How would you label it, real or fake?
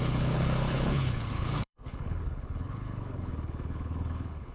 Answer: fake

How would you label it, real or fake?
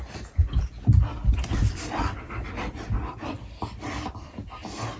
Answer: real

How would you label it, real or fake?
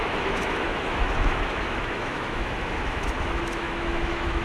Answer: fake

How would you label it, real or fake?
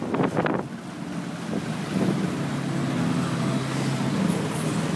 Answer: real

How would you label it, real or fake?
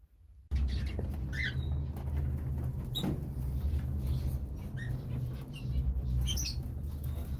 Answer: real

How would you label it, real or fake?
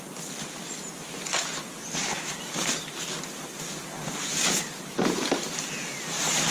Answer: real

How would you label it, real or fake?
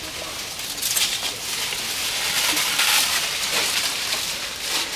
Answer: real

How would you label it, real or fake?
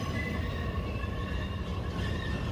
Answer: real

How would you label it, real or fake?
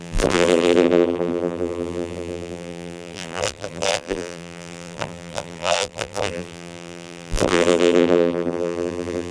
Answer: fake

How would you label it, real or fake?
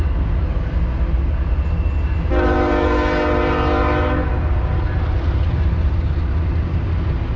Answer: real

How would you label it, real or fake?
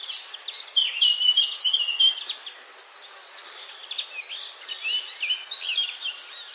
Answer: real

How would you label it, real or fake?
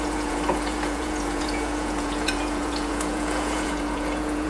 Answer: fake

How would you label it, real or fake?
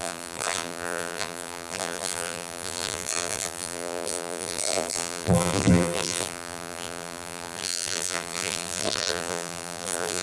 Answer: fake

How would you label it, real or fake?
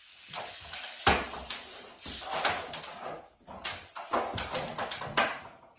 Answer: real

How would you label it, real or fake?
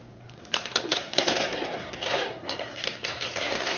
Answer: fake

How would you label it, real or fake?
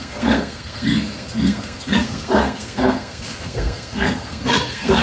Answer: fake